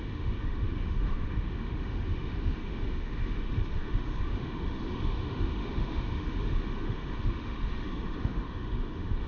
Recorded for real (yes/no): no